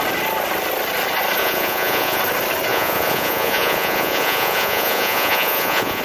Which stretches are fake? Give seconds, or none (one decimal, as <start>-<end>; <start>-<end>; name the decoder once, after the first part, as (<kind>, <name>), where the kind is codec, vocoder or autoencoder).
1.4-2.2 (vocoder, Vocos); 2.7-6.0